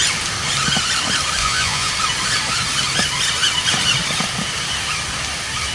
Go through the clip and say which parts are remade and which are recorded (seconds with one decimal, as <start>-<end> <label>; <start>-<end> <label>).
0.0-1.4 recorded; 1.4-1.9 remade; 1.9-5.7 recorded